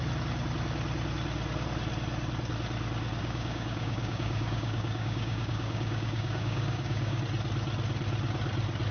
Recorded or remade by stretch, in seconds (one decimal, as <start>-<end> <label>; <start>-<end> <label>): 0.0-3.2 recorded; 3.2-7.2 remade; 7.2-8.9 recorded